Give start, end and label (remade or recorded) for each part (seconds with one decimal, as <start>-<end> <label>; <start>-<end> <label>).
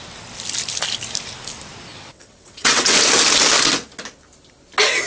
0.0-1.9 recorded; 1.9-3.0 remade; 3.0-5.1 recorded